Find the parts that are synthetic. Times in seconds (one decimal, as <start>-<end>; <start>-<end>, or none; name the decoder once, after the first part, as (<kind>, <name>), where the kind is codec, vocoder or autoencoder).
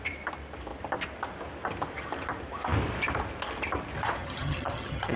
4.2-5.2 (vocoder, HiFi-GAN)